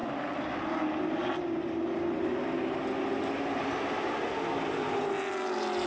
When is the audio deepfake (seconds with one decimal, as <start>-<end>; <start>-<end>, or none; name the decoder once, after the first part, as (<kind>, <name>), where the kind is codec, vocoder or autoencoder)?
none

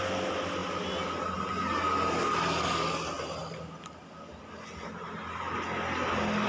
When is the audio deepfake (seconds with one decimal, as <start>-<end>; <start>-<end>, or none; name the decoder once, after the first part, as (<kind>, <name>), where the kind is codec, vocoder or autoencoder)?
none

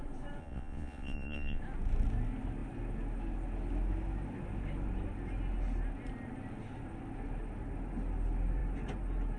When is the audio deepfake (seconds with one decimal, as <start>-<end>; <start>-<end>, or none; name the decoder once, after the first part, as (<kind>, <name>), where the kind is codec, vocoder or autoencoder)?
0.4-1.6 (vocoder, Vocos)

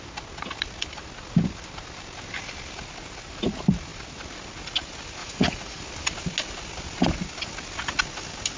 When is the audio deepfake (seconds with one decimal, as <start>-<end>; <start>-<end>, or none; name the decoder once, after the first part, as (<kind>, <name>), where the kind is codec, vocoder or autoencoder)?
5.2-5.8 (vocoder, Vocos)

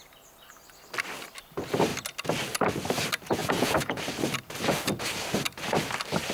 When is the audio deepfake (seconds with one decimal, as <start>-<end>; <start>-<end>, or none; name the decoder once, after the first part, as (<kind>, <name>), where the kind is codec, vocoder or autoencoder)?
3.4-4.0 (vocoder, Vocos)

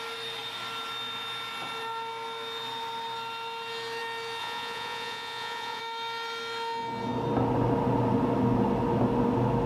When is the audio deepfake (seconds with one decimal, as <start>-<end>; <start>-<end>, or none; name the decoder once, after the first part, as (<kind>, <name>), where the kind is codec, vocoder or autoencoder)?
4.4-5.8 (vocoder, Vocos)

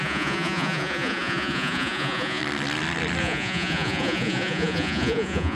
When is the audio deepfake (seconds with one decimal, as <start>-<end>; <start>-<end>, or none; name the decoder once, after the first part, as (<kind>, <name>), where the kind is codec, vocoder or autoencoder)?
0.0-2.4 (vocoder, Vocos); 3.2-5.6

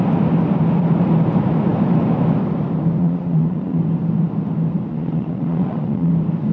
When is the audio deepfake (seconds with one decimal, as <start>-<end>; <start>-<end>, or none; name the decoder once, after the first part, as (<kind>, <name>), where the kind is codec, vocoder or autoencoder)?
3.0-3.8 (vocoder, Vocos); 4.9-6.1